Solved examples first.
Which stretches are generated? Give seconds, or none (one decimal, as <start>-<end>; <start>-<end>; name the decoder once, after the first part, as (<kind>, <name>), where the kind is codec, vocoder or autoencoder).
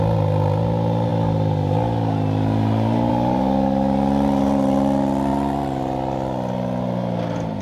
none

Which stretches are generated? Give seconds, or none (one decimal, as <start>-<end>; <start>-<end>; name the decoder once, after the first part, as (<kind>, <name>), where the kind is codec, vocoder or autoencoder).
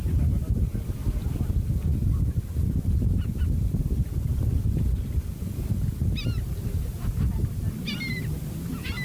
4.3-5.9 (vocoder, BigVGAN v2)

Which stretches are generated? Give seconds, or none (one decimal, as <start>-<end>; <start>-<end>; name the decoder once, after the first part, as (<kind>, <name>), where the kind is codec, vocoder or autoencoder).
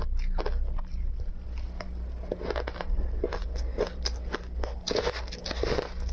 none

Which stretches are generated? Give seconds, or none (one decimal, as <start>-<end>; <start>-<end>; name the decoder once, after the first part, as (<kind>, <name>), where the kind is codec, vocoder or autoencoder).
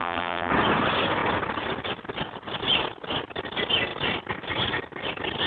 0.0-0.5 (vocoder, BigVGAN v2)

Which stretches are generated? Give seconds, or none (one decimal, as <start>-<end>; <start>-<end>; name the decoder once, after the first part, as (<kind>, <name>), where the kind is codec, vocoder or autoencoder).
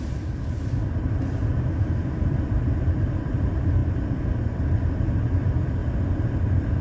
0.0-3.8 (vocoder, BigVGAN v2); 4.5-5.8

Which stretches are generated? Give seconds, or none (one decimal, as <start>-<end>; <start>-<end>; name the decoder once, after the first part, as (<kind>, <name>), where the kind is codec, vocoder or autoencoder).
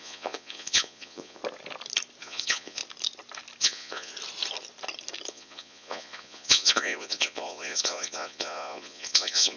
0.0-1.4 (vocoder, Vocos); 2.2-2.8; 3.6-4.1; 5.3-9.6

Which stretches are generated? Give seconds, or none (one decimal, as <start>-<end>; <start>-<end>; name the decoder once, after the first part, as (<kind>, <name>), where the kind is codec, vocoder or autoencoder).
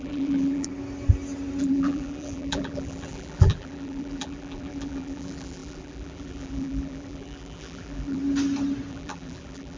0.0-0.7 (vocoder, BigVGAN v2); 1.6-8.2; 8.9-9.8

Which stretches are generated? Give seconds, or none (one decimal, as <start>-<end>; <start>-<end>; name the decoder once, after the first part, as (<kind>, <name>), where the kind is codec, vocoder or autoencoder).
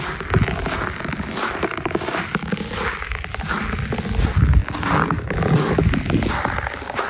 none